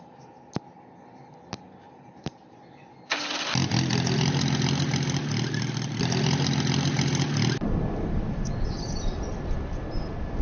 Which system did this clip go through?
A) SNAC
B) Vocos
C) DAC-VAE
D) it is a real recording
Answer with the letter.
D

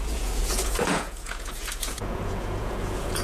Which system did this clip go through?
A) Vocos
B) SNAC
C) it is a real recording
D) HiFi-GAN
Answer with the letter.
A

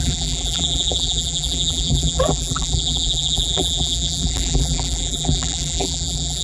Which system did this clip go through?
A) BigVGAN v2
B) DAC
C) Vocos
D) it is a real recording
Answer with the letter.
A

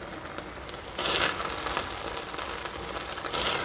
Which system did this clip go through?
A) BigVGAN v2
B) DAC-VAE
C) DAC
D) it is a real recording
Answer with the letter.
D